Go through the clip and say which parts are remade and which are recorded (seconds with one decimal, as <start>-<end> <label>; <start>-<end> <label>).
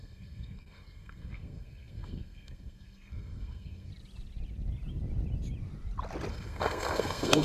0.0-3.9 remade; 3.9-6.3 recorded; 6.3-7.4 remade